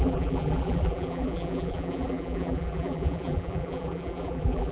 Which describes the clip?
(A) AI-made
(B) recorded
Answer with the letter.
A